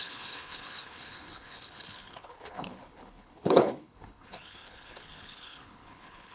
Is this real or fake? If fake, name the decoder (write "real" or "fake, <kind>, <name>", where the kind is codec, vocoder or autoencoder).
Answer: fake, codec, HILCodec